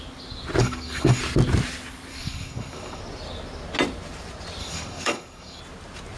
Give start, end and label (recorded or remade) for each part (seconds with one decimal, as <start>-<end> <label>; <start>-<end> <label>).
0.0-0.6 recorded; 0.6-1.2 remade; 1.2-2.1 recorded; 2.1-3.0 remade; 3.0-4.6 recorded; 4.6-5.6 remade; 5.6-6.2 recorded